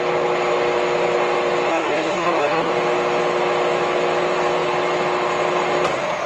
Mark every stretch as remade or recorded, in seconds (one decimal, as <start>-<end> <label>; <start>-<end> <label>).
0.0-1.7 recorded; 1.7-2.7 remade; 2.7-6.3 recorded